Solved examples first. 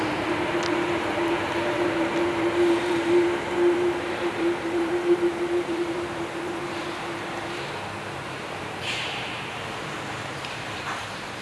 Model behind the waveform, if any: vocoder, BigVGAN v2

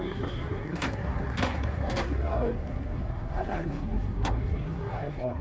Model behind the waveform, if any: codec, SNAC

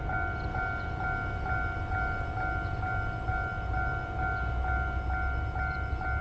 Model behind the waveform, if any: none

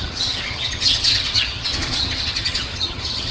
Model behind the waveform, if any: vocoder, HiFi-GAN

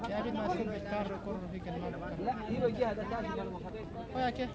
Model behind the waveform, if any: none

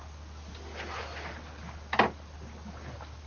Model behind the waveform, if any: none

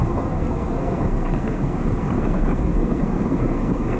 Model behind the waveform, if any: codec, SNAC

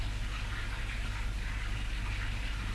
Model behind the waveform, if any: none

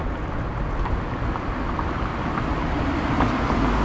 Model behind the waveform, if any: none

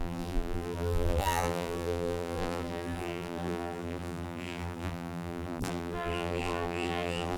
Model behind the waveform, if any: vocoder, BigVGAN v2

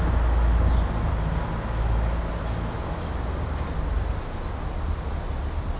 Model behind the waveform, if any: none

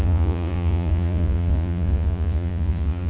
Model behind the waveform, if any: vocoder, Vocos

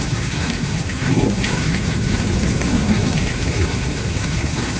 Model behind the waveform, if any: codec, SNAC